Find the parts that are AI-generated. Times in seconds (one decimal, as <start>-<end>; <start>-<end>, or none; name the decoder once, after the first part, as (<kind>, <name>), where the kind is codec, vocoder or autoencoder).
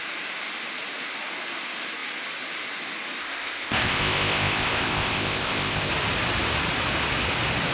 3.2-5.9 (codec, ZipCodec)